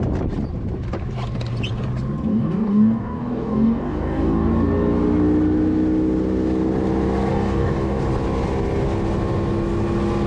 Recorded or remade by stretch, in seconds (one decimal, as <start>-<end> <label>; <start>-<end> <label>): 0.0-2.3 recorded; 2.3-4.5 remade; 4.5-7.3 recorded; 7.3-8.0 remade; 8.0-10.3 recorded